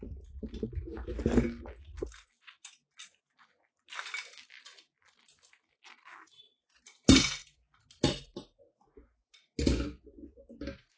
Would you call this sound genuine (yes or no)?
yes